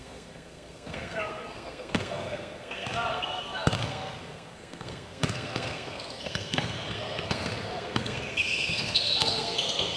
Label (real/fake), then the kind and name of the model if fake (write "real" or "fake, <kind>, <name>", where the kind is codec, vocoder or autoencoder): fake, codec, SNAC